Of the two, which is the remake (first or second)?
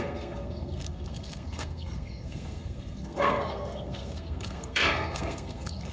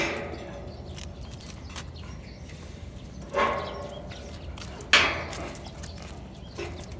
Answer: first